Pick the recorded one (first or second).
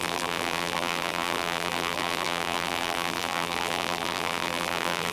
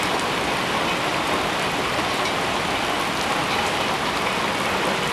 second